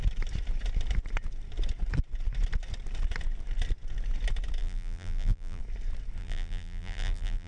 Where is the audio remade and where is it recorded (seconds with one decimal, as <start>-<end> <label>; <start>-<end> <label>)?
0.0-4.6 recorded; 4.6-5.6 remade; 5.6-6.2 recorded; 6.2-7.5 remade